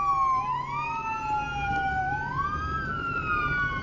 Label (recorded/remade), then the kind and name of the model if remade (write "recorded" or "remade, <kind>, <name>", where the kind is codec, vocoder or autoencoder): recorded